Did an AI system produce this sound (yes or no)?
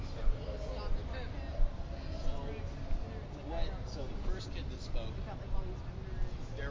no